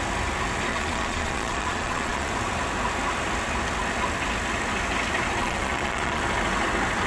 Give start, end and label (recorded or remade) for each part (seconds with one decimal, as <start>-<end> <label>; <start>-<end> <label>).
0.0-0.7 recorded; 0.7-2.3 remade; 2.3-5.4 recorded; 5.4-6.2 remade; 6.2-7.1 recorded